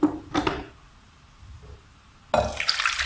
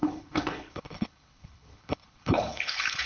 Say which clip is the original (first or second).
first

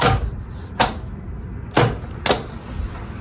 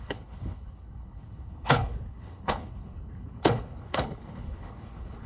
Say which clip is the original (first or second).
first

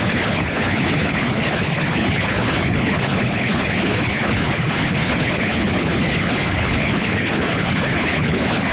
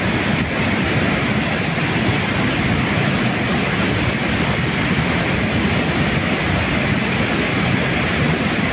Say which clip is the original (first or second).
second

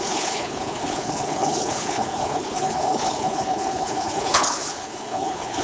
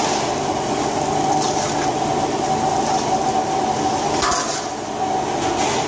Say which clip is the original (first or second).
second